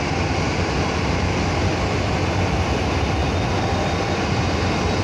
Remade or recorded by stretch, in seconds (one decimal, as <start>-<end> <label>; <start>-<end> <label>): 0.0-5.0 recorded